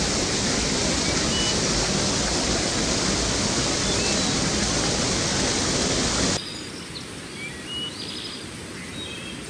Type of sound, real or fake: real